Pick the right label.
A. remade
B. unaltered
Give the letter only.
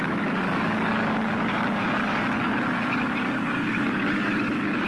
A